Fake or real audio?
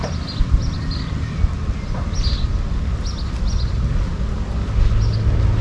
real